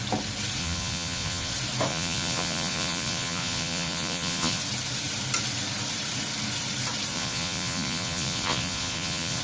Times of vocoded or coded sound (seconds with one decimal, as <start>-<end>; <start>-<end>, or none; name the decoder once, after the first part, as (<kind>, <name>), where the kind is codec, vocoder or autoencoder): 0.6-1.5 (vocoder, Vocos); 1.9-4.6; 7.1-9.4